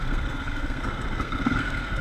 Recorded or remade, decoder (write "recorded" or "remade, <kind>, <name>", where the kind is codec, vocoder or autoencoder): remade, codec, SNAC